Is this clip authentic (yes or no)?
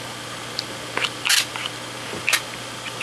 yes